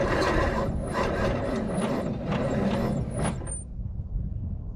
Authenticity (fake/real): real